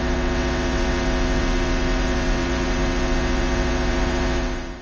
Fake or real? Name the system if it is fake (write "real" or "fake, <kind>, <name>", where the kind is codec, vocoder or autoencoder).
fake, vocoder, WaveNeXt